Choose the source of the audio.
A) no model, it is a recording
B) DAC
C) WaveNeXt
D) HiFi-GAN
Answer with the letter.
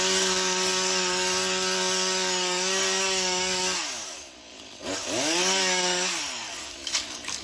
B